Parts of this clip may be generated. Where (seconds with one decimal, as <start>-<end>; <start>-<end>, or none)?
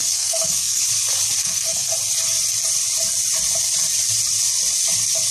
0.0-0.8; 1.4-1.9